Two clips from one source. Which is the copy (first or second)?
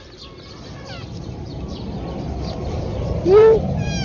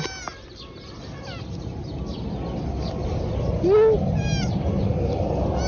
first